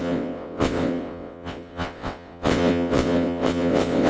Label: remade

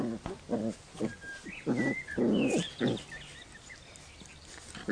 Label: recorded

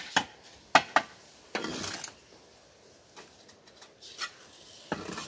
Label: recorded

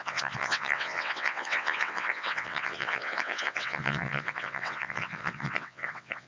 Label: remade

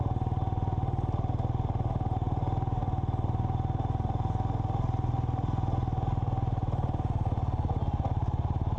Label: recorded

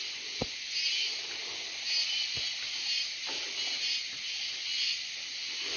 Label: recorded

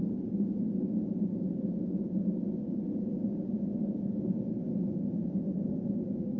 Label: recorded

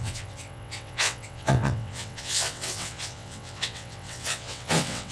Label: remade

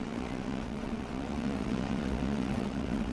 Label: remade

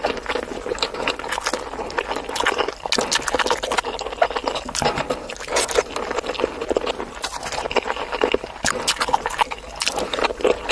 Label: recorded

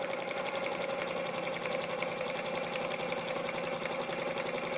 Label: recorded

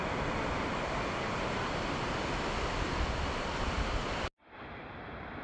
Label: recorded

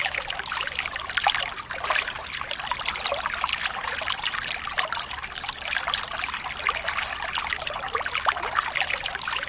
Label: recorded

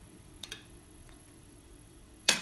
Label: remade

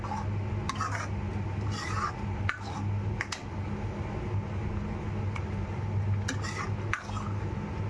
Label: recorded